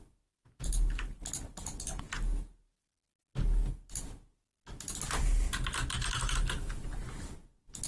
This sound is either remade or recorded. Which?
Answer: recorded